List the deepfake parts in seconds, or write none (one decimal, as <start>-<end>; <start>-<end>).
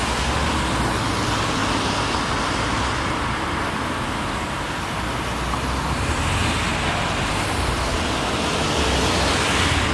none